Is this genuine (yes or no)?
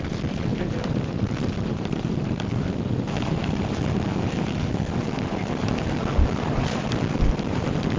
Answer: no